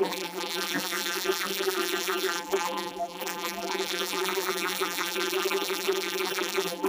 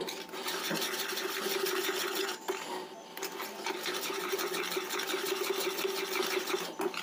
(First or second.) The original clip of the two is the second